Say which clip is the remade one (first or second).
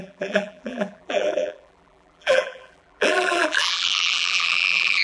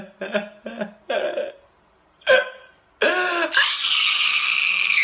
first